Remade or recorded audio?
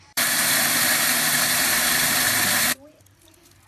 remade